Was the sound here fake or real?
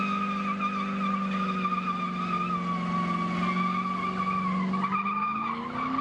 real